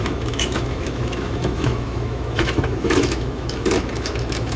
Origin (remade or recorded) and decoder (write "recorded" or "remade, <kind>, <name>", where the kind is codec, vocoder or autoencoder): remade, autoencoder, DAC-VAE